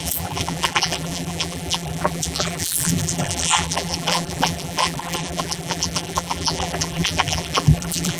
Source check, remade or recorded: remade